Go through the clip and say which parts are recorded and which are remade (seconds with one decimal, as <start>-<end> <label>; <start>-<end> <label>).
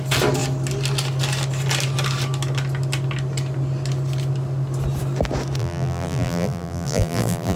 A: 0.0-5.6 recorded; 5.6-7.6 remade